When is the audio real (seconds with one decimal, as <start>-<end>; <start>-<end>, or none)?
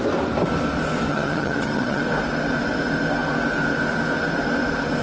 0.0-1.1; 2.0-5.0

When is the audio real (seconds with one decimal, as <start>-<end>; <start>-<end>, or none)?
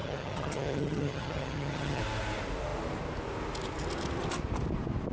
2.0-5.1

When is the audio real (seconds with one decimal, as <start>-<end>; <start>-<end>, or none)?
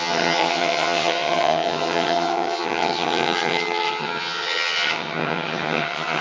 none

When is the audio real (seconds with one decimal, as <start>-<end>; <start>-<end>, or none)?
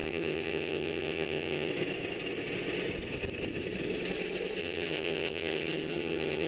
1.7-4.6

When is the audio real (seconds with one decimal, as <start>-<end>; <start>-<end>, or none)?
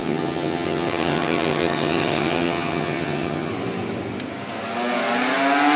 3.5-5.8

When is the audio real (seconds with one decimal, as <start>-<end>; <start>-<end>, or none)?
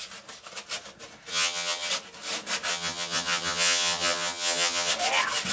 0.0-1.3; 1.9-2.7; 4.9-5.5